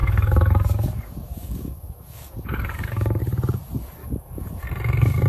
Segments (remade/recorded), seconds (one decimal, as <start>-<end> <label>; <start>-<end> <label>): 0.0-3.2 remade; 3.2-4.0 recorded; 4.0-4.6 remade; 4.6-5.3 recorded